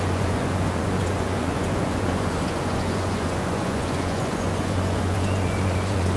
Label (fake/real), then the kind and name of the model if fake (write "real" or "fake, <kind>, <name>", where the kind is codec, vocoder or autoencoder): fake, vocoder, Vocos